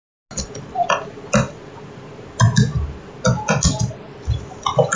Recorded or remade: recorded